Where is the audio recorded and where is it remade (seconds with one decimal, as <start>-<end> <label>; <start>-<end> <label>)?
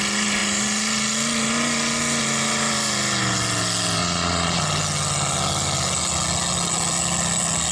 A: 0.0-4.0 recorded; 4.0-4.6 remade; 4.6-7.7 recorded